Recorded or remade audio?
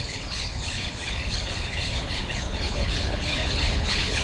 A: remade